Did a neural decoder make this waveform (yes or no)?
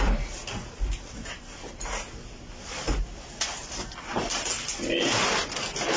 no